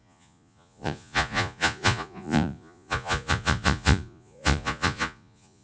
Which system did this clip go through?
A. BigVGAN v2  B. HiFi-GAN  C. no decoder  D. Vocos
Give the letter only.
D